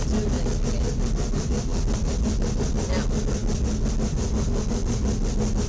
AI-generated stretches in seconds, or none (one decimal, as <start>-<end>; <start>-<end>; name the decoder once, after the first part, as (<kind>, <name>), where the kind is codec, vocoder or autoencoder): none